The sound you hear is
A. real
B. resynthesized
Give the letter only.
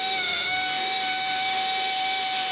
B